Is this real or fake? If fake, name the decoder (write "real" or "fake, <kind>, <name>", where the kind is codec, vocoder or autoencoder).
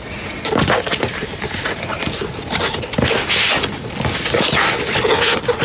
real